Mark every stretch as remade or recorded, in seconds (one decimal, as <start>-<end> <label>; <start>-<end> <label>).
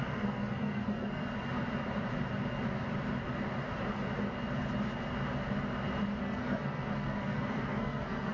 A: 0.0-1.2 remade; 1.2-6.2 recorded; 6.2-8.3 remade